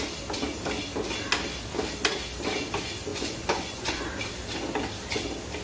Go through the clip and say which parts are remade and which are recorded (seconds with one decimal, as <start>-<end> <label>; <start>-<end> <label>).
0.0-3.1 recorded; 3.1-4.0 remade; 4.0-5.6 recorded